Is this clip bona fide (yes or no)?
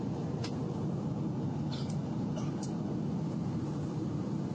yes